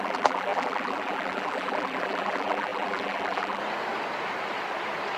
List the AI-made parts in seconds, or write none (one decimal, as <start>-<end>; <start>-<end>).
0.0-3.6